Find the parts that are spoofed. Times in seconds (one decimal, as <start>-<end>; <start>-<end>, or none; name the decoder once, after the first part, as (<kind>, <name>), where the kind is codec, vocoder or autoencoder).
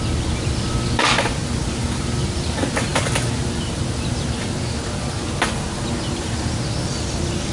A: none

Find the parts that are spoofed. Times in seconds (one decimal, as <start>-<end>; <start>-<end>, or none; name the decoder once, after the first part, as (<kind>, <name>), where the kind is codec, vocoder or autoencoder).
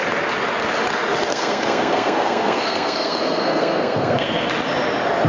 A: 1.3-4.5 (codec, SNAC)